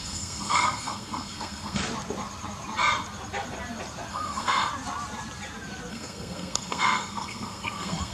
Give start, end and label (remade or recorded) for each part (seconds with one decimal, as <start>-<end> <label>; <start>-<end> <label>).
0.0-1.8 remade; 1.8-4.1 recorded; 4.1-4.7 remade; 4.7-5.9 recorded; 5.9-8.1 remade